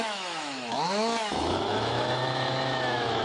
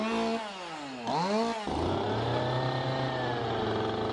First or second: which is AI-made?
first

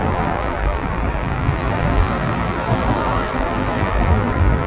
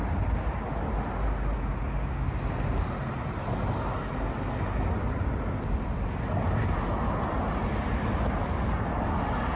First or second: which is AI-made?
first